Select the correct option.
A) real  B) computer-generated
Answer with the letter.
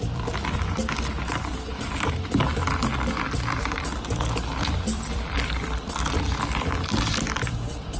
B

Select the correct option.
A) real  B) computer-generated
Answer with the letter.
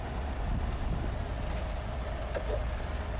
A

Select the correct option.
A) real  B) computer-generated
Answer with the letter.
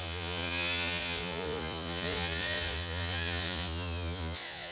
B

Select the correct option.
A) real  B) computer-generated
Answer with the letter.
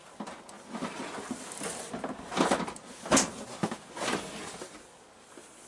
A